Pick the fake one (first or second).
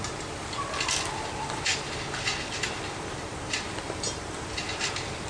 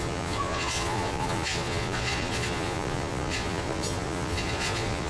second